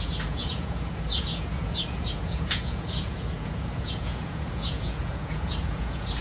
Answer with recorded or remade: remade